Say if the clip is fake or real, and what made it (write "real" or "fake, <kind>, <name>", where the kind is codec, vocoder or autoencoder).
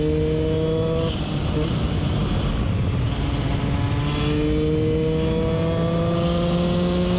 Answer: real